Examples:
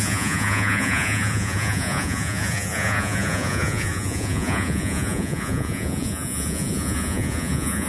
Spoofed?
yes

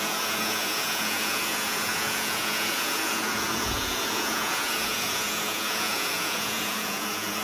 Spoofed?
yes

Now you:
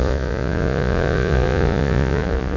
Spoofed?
yes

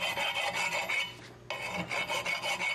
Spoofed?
no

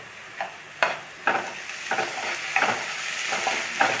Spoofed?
no